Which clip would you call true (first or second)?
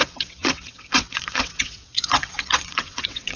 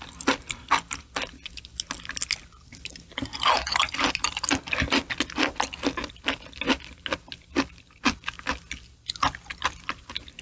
second